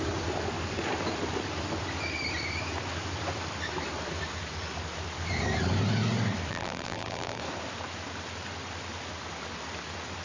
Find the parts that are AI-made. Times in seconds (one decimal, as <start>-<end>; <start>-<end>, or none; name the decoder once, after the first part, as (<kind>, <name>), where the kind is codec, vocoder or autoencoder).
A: 6.5-7.4 (vocoder, BigVGAN v2)